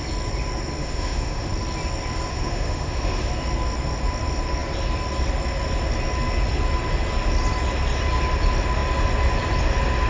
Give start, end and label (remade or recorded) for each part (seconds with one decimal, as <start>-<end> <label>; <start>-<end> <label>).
0.0-0.8 recorded; 0.8-1.5 remade; 1.5-2.3 recorded; 2.3-3.3 remade; 3.3-10.1 recorded